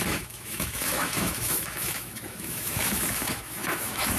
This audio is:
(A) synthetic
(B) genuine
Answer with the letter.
A